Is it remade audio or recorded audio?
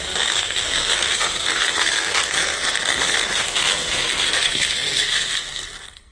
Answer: remade